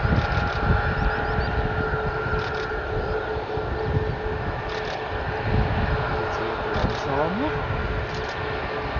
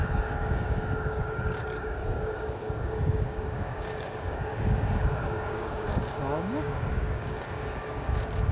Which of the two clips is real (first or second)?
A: first